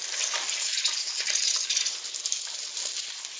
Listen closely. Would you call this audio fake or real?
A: real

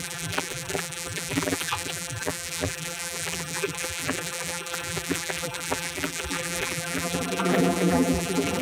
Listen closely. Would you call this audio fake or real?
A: fake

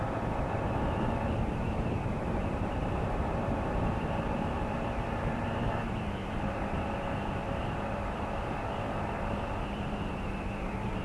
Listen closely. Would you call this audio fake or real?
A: fake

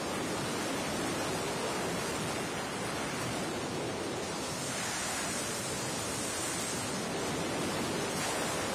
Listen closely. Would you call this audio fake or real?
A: real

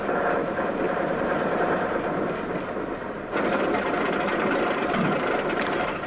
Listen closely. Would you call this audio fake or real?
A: fake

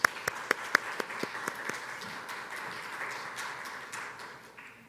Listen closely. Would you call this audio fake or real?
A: real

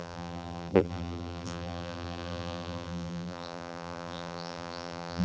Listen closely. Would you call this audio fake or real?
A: fake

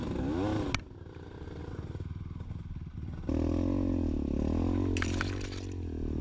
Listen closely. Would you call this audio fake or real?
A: real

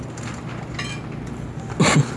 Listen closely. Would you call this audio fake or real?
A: real